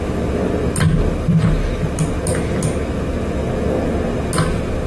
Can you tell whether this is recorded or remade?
recorded